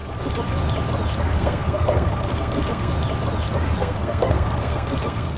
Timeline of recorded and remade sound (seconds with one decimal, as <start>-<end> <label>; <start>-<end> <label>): 0.0-1.2 recorded; 1.2-2.9 remade; 2.9-3.8 recorded; 3.8-5.4 remade